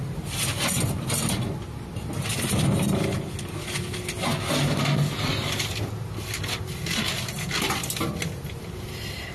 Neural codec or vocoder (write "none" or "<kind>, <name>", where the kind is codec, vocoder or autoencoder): none